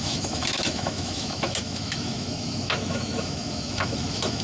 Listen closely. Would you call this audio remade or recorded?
remade